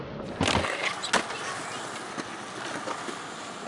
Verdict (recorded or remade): recorded